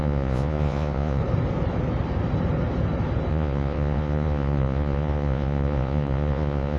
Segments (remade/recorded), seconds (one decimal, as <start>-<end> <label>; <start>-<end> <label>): 0.0-1.2 remade; 1.2-3.3 recorded; 3.3-6.8 remade